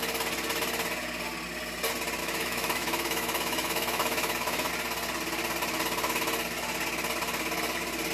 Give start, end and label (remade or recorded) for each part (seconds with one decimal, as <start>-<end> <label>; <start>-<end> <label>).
0.0-2.2 recorded; 2.2-4.7 remade; 4.7-8.1 recorded